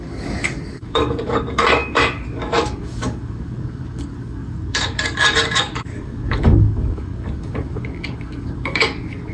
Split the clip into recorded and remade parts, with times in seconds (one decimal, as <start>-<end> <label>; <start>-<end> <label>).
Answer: 0.0-9.3 remade

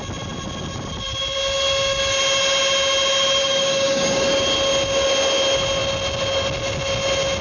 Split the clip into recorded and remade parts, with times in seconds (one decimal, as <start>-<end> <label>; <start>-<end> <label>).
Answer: 0.0-3.4 recorded; 3.4-4.2 remade; 4.2-7.4 recorded